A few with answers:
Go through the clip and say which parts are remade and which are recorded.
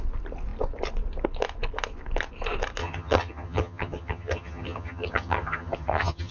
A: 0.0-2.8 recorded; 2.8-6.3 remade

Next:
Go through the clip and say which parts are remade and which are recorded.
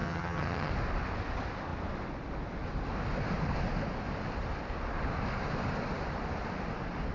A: 0.0-0.7 remade; 0.7-7.1 recorded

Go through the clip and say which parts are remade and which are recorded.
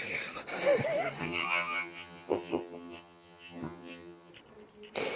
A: 0.0-1.2 recorded; 1.2-4.3 remade; 4.3-5.2 recorded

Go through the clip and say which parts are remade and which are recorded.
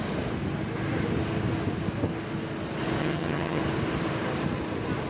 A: 0.0-3.0 recorded; 3.0-3.6 remade; 3.6-5.1 recorded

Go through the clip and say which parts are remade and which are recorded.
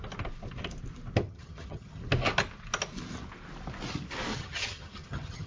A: 0.0-1.2 recorded; 1.2-2.0 remade; 2.0-4.3 recorded; 4.3-5.5 remade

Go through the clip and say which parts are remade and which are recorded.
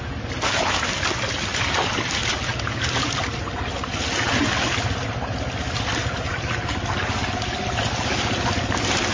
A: 0.0-9.1 recorded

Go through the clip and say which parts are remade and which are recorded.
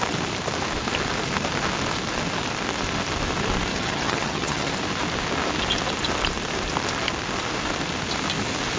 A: 0.0-3.7 recorded; 3.7-4.7 remade; 4.7-8.8 recorded